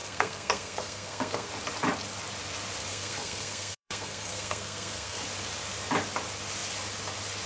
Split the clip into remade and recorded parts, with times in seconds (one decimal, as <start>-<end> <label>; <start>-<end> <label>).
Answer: 0.0-1.5 remade; 1.5-2.9 recorded; 2.9-5.2 remade; 5.2-7.5 recorded